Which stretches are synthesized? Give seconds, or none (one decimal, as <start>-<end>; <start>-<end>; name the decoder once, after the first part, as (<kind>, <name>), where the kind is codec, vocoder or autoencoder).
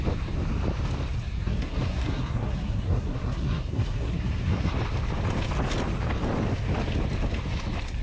1.4-4.7 (codec, SNAC)